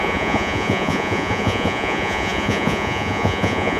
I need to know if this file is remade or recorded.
remade